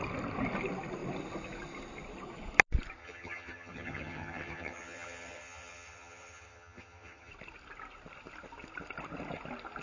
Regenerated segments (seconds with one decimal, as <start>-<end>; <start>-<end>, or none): 3.0-7.3